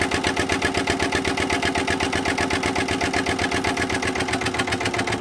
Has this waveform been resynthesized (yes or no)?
no